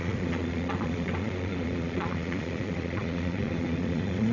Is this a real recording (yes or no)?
no